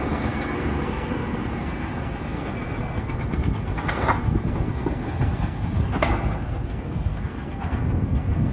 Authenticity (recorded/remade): remade